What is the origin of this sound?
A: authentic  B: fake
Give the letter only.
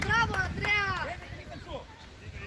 A